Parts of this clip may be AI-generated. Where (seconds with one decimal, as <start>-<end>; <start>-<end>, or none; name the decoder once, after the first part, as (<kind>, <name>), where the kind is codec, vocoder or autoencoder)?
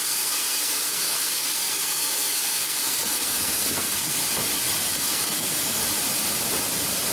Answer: 0.0-4.2 (codec, SNAC); 4.9-5.8